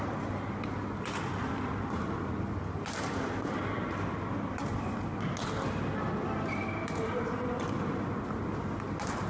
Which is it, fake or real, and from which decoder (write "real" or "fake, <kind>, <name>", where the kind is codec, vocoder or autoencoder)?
real